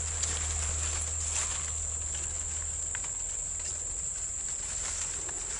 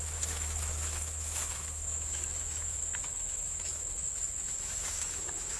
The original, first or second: first